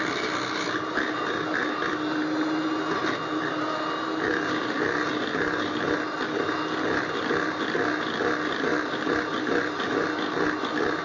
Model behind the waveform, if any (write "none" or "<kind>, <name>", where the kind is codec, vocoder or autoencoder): none